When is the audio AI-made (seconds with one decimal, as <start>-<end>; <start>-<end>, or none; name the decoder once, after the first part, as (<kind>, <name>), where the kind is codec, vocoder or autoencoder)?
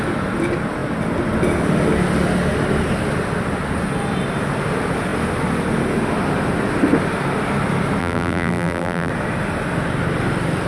8.0-9.1 (vocoder, BigVGAN v2)